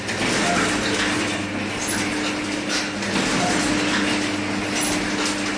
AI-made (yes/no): no